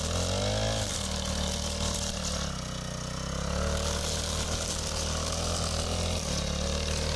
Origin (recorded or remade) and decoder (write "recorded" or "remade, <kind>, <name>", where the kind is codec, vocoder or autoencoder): recorded